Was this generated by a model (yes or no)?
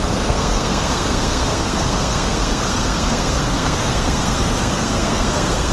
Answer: yes